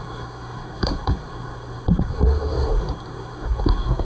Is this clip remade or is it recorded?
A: remade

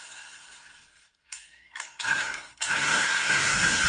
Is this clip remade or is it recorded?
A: remade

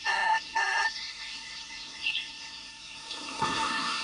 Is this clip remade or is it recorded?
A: remade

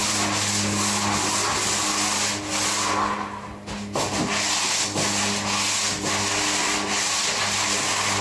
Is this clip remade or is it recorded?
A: recorded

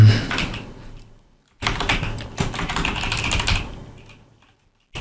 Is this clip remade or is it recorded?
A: recorded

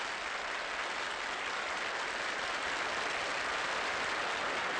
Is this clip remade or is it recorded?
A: recorded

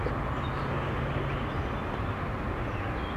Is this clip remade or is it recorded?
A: recorded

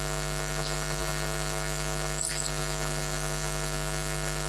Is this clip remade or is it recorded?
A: recorded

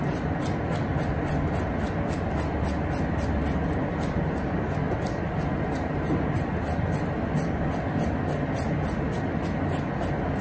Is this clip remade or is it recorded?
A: recorded